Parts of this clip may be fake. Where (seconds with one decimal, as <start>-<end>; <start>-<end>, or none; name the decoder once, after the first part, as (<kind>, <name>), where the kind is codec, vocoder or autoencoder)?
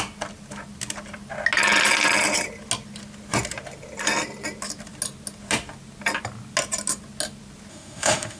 7.7-8.4 (autoencoder, DAC-VAE)